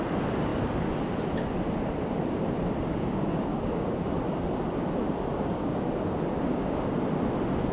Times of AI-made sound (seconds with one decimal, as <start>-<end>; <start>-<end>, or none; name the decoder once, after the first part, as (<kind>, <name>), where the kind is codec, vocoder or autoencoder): 2.9-4.1 (codec, DAC); 5.0-6.9